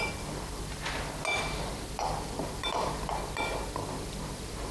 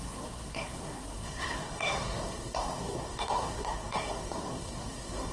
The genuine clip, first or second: first